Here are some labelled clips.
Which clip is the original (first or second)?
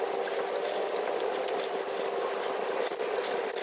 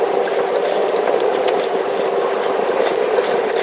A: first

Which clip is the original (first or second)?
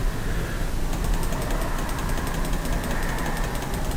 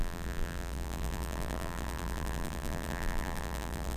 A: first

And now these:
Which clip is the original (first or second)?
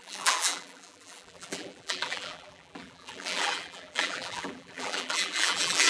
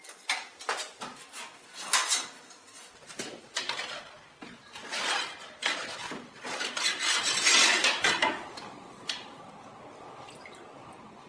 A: second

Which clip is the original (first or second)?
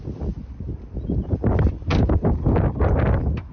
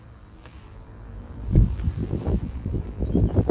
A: first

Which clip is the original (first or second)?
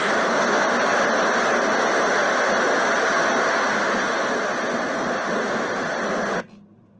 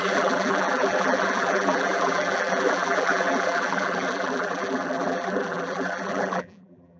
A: first